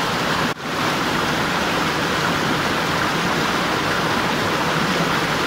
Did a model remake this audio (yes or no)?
no